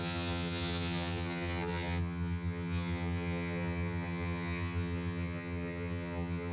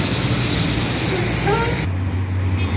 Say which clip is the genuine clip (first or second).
second